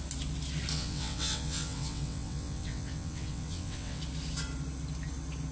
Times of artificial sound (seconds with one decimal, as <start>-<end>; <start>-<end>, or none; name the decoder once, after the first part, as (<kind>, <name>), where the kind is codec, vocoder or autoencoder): 0.7-4.0 (vocoder, WaveNeXt)